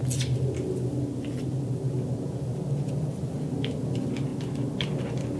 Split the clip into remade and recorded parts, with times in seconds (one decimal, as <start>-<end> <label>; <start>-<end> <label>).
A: 0.0-5.4 recorded